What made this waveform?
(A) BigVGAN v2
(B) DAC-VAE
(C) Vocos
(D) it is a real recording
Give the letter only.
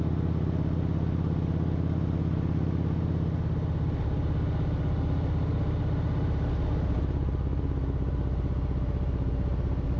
D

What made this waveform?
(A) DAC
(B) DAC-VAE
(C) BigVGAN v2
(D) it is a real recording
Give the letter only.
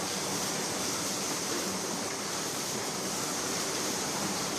C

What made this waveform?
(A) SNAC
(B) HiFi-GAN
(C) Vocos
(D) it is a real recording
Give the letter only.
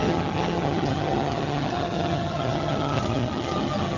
B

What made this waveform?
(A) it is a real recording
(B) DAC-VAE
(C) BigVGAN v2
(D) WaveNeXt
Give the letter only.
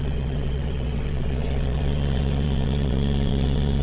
D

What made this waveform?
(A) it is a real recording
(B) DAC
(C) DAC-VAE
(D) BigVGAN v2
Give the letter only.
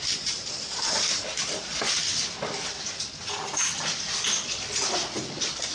A